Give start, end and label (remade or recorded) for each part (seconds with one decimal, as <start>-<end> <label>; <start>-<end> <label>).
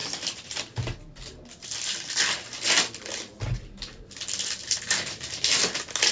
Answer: 0.0-0.6 remade; 0.6-6.1 recorded